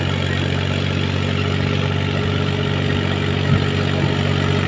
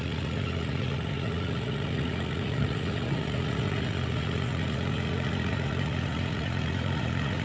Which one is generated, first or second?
second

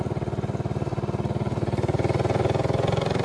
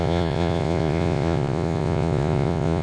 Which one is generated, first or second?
second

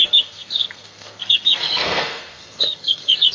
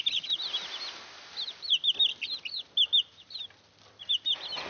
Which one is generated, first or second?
first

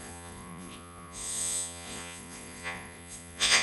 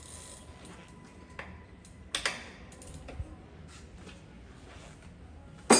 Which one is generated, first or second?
first